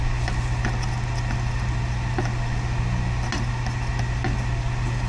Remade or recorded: recorded